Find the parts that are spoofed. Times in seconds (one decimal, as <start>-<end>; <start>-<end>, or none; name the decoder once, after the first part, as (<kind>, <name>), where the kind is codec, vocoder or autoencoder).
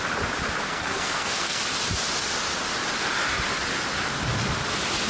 0.6-1.6 (codec, SNAC)